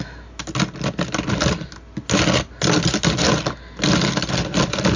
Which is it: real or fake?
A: real